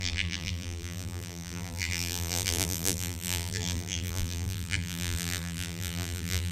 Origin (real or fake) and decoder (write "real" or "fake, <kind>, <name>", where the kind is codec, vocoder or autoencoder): fake, vocoder, BigVGAN v2